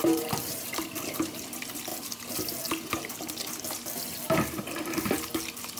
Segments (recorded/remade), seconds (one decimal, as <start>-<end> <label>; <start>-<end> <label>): 0.0-0.6 remade; 0.6-5.8 recorded